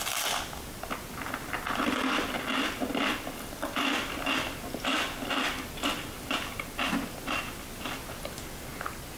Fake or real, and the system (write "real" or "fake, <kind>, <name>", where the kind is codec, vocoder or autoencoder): real